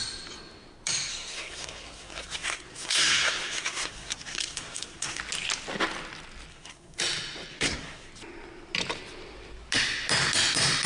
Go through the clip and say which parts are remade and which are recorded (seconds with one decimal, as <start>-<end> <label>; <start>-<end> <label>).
0.0-1.1 recorded; 1.1-5.2 remade; 5.2-6.5 recorded; 6.5-7.0 remade; 7.0-7.5 recorded; 7.5-8.1 remade; 8.1-10.9 recorded

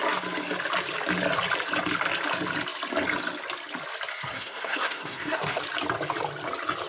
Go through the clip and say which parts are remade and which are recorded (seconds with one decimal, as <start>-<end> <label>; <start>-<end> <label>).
0.0-4.1 recorded; 4.1-5.6 remade; 5.6-6.9 recorded